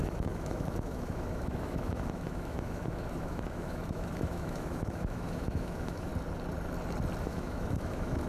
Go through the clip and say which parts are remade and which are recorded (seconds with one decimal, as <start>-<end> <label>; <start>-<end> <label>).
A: 0.0-6.1 remade; 6.1-7.2 recorded; 7.2-8.3 remade